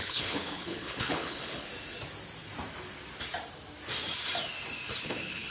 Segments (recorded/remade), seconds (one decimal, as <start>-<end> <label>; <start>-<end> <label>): 0.0-1.7 remade; 1.7-5.0 recorded; 5.0-5.5 remade